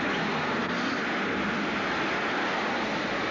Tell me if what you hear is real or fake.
real